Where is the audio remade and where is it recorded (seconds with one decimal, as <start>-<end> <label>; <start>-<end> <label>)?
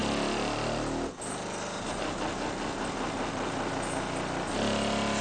0.0-5.2 recorded